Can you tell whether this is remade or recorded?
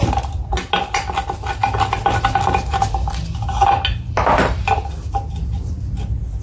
recorded